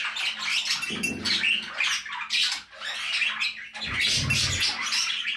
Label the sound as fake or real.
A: real